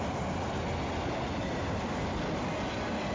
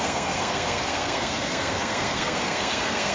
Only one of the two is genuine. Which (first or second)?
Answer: first